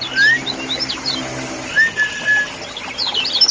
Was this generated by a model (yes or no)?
no